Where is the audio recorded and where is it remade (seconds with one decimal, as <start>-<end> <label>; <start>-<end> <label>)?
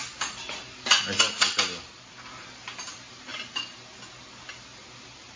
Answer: 0.0-0.6 remade; 0.6-3.3 recorded; 3.3-4.1 remade; 4.1-5.4 recorded